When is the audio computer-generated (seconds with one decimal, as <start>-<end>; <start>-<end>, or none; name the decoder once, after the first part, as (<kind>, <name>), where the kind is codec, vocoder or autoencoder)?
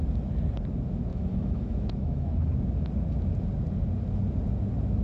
1.1-2.5 (autoencoder, DAC-VAE)